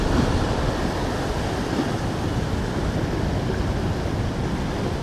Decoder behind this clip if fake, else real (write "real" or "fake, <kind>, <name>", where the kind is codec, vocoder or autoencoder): real